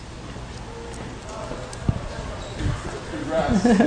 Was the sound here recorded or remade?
recorded